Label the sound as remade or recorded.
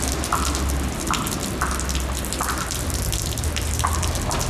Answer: recorded